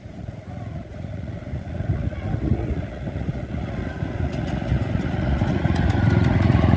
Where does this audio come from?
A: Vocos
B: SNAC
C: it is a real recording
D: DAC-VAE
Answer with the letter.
A